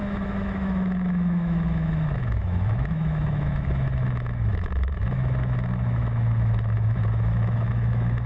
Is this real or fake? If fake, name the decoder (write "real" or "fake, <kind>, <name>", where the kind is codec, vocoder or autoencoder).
fake, autoencoder, DAC-VAE